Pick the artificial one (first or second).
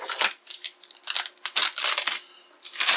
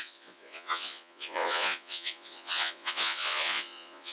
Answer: second